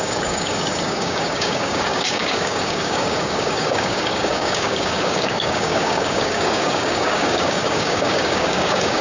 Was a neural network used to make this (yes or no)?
yes